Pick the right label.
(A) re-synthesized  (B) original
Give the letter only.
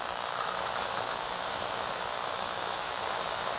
A